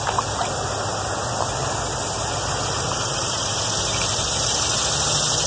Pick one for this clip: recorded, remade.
recorded